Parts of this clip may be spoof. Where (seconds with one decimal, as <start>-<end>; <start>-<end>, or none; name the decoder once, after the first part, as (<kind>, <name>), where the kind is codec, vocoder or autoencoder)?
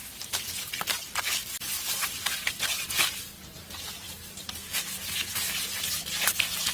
none